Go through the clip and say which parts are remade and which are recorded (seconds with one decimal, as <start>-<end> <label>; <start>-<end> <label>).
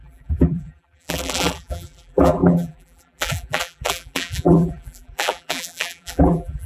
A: 0.0-6.7 remade